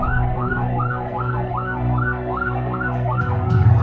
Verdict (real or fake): fake